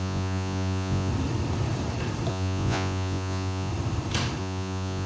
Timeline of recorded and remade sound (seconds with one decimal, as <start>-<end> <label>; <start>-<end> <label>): 0.0-1.1 remade; 1.1-2.3 recorded; 2.3-3.7 remade; 3.7-4.4 recorded; 4.4-5.1 remade